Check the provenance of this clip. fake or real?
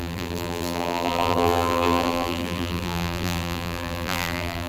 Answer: fake